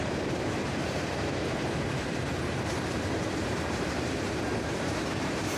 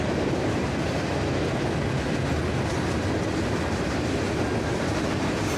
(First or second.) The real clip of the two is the second